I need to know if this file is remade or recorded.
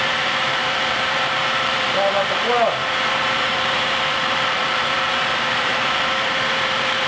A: remade